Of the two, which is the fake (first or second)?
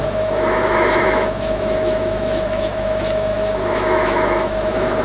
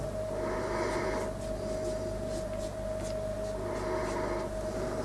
first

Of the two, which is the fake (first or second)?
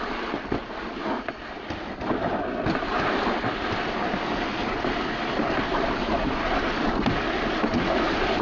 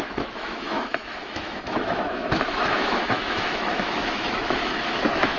second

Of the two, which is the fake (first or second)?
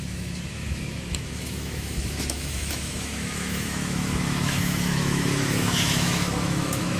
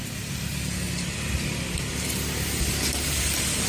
first